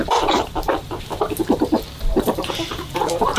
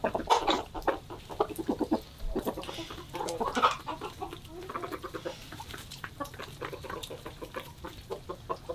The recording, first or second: second